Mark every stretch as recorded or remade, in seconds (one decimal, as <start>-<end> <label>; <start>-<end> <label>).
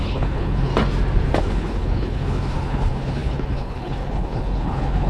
0.0-0.7 remade; 0.7-1.4 recorded; 1.4-5.1 remade